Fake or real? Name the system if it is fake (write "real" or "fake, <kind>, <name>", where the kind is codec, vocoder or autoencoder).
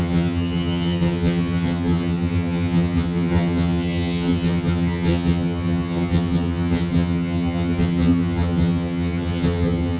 fake, vocoder, HiFi-GAN